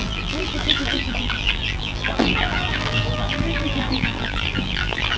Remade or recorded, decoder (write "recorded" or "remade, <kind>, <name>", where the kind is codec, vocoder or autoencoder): remade, vocoder, BigVGAN v2